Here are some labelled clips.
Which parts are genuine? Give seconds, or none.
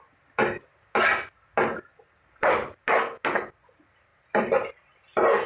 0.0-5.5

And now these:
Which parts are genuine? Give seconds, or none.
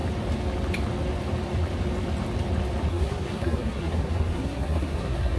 0.0-2.9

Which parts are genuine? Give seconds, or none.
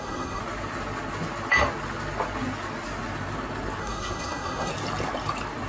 0.4-3.8; 4.7-5.7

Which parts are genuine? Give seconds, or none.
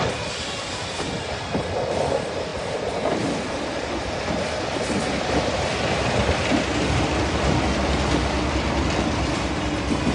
0.0-10.1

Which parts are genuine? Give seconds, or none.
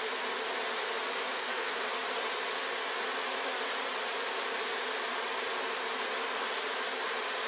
0.0-1.3; 1.8-7.5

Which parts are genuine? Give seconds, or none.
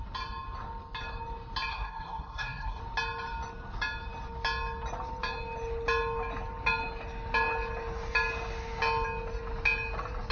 0.0-1.7; 2.8-10.3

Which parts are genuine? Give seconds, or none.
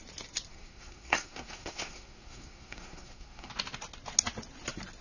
0.0-0.5; 3.5-5.0